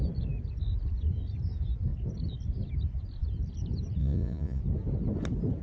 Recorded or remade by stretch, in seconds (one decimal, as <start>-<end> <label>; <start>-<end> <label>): 0.0-4.0 recorded; 4.0-4.6 remade; 4.6-5.6 recorded